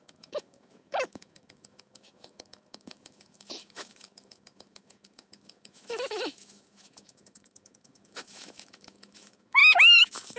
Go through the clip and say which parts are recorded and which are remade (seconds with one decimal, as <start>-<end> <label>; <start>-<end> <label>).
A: 0.0-10.4 remade